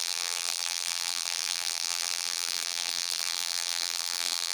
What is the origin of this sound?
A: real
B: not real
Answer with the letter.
B